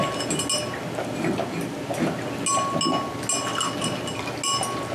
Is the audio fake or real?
real